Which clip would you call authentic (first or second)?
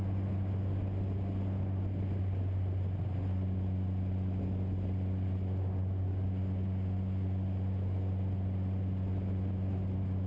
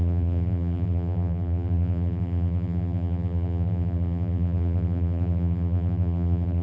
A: first